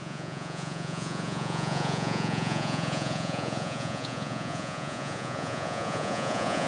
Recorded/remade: remade